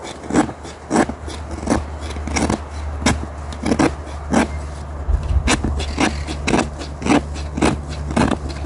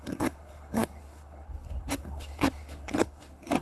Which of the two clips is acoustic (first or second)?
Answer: first